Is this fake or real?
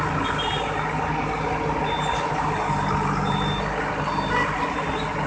real